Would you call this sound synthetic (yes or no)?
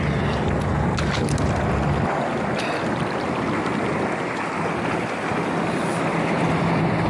no